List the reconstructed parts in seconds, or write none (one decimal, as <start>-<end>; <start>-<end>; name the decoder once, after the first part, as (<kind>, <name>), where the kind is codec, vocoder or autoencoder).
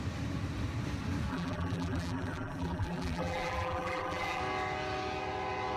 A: 1.3-4.4 (vocoder, BigVGAN v2)